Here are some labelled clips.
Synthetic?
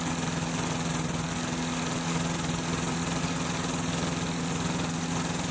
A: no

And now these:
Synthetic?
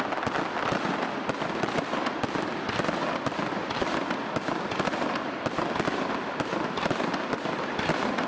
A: no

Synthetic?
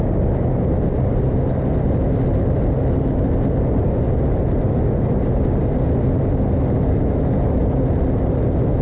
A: no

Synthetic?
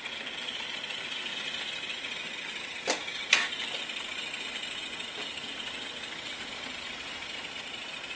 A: no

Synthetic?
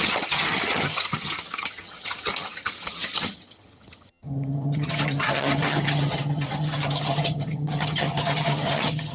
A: yes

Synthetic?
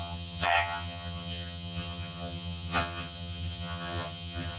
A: yes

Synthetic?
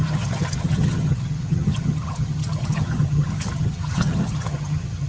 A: yes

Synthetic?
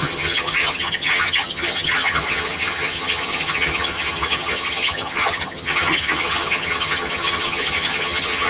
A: yes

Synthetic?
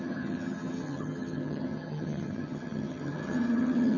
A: yes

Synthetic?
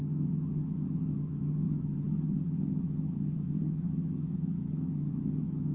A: yes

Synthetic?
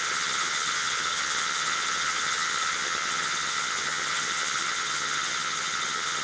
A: yes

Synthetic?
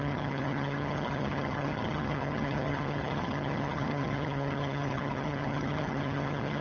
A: yes